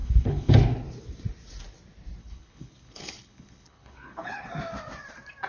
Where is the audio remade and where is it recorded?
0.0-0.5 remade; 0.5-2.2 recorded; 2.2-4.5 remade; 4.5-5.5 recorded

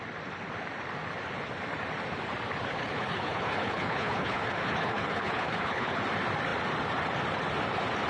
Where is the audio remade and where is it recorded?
0.0-2.7 recorded; 2.7-6.0 remade; 6.0-8.1 recorded

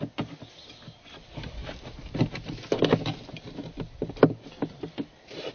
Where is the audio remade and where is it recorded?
0.0-5.5 recorded